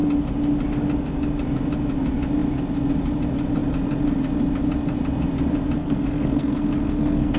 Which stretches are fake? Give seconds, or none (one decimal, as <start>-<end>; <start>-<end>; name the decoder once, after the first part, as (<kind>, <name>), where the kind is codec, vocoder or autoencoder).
5.8-7.4 (codec, SNAC)